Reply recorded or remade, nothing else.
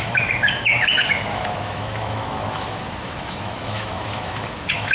remade